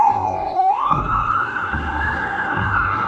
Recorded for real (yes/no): no